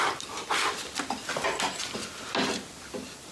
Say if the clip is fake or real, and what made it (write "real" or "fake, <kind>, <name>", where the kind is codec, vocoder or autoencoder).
real